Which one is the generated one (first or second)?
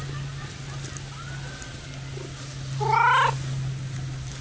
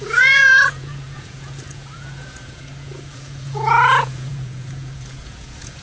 second